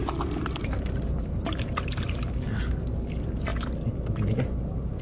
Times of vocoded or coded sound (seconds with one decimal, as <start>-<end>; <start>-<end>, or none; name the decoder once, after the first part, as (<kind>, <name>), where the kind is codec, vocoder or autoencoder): none